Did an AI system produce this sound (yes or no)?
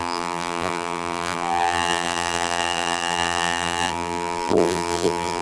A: yes